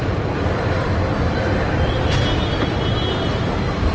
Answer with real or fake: real